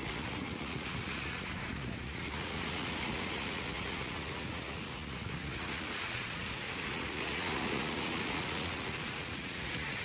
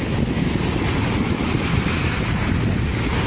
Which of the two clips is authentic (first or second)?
second